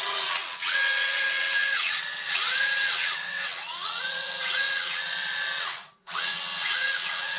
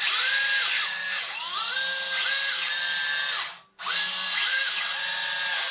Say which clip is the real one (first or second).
second